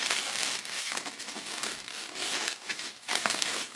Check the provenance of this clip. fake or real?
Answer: fake